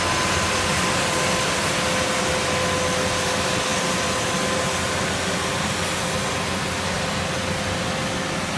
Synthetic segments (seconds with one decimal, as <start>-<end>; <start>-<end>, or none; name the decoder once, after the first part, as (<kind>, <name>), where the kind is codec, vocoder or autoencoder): none